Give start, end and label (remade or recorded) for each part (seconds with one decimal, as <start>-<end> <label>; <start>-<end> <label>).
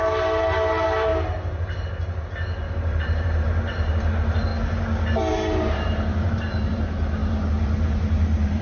0.0-1.1 remade; 1.1-2.7 recorded; 2.7-4.5 remade; 4.5-5.3 recorded; 5.3-8.6 remade